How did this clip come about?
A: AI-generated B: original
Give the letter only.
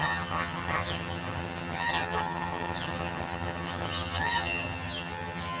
A